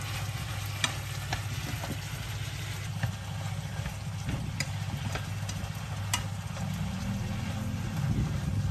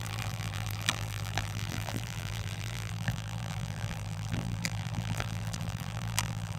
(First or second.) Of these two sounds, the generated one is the second